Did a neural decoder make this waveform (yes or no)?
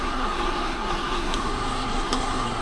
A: yes